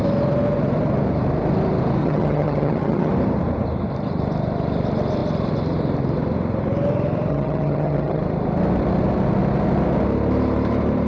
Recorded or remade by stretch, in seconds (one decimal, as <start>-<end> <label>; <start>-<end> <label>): 0.0-2.0 recorded; 2.0-3.1 remade; 3.1-7.3 recorded; 7.3-8.2 remade; 8.2-11.1 recorded